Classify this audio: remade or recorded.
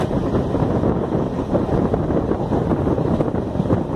recorded